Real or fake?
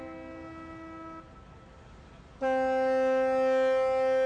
real